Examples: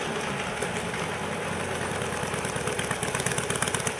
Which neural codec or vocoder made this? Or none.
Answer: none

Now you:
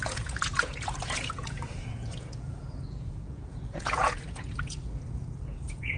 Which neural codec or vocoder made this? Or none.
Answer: vocoder, Vocos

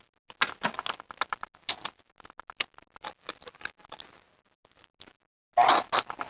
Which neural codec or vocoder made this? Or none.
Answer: none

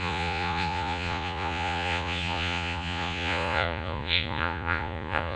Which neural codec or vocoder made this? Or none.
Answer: vocoder, Vocos